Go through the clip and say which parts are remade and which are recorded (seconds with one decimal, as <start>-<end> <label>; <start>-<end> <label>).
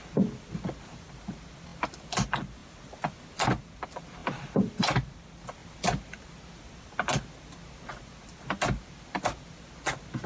0.0-10.3 recorded